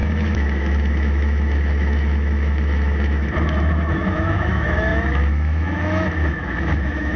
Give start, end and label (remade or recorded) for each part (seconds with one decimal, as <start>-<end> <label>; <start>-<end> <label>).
0.0-7.2 remade